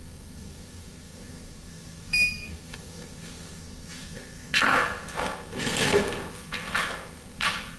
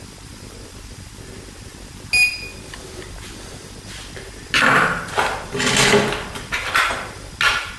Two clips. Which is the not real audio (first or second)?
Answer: first